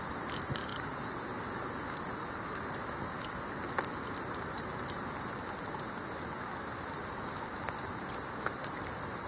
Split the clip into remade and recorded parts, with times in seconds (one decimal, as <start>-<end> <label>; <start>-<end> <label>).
0.0-9.3 recorded